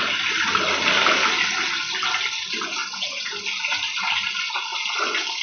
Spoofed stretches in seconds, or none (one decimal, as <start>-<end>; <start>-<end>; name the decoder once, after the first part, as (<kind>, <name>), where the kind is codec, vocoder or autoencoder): none